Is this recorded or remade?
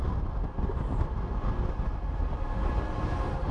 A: recorded